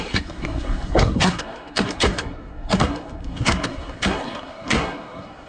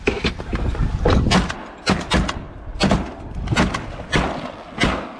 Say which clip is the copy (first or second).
first